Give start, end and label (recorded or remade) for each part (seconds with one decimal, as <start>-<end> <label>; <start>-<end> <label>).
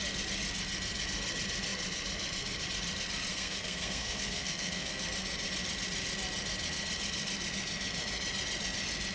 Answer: 0.0-3.3 recorded; 3.3-5.0 remade; 5.0-9.1 recorded